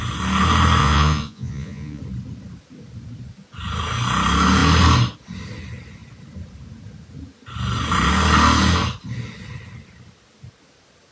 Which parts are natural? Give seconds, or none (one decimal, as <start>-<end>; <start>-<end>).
0.0-0.8; 2.0-11.1